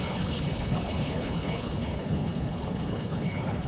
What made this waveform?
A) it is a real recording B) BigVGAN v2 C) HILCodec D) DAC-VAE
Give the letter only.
C